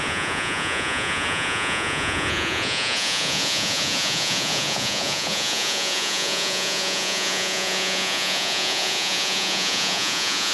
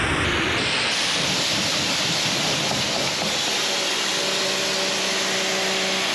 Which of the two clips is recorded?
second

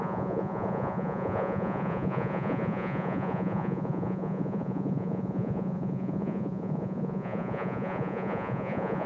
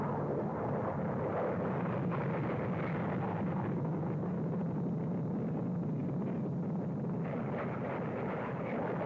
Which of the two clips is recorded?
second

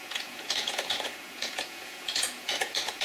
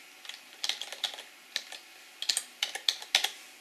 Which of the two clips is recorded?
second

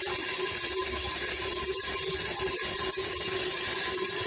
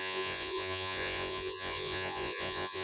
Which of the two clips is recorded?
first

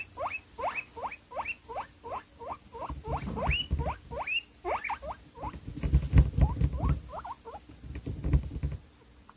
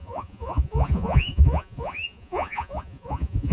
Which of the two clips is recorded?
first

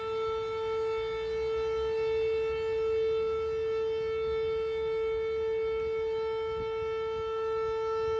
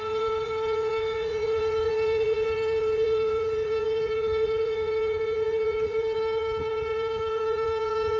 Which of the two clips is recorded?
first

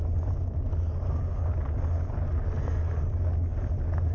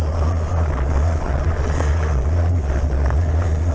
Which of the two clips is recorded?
first